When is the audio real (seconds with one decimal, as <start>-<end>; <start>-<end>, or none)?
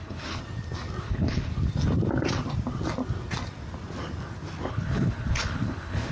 0.4-1.0; 1.5-4.7